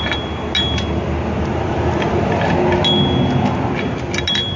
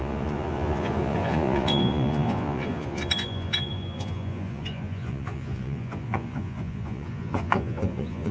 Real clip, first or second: first